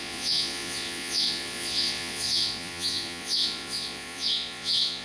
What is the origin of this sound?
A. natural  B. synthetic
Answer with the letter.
B